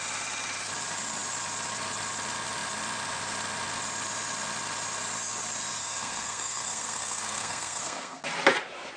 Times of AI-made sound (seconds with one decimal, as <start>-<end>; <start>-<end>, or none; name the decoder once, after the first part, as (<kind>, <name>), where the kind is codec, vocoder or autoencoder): 5.8-8.2 (codec, SNAC)